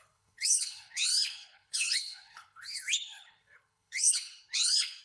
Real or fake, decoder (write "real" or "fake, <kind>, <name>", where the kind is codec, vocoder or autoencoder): fake, codec, HILCodec